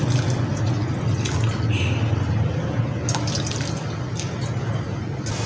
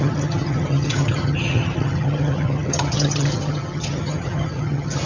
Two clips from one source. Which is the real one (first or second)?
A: first